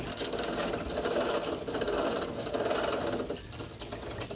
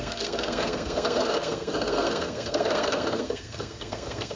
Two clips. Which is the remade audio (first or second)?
second